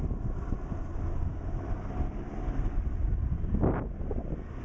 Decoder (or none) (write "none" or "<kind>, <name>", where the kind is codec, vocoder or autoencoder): none